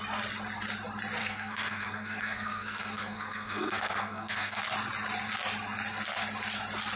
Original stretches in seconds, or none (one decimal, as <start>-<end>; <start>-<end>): 0.0-1.2; 4.6-7.0